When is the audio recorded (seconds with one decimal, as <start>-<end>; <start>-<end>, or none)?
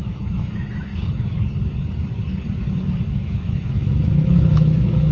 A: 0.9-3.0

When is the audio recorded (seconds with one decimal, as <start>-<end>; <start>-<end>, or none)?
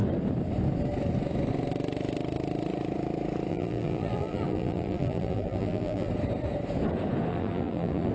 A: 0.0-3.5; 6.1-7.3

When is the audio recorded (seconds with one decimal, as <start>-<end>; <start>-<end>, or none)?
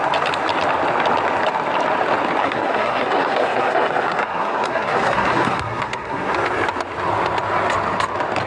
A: 0.0-2.4; 6.3-8.5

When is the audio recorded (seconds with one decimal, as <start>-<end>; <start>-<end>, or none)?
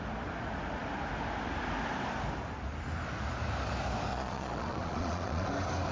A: 0.0-4.1; 5.5-5.9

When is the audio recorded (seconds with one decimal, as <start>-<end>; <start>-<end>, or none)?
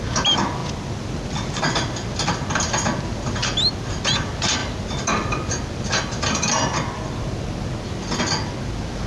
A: 0.0-9.1